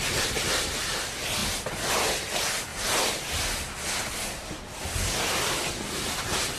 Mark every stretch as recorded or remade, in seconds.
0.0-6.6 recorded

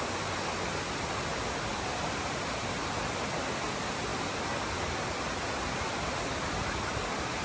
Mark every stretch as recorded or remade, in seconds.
0.0-7.4 recorded

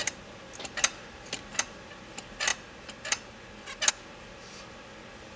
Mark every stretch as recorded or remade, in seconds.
0.0-5.4 recorded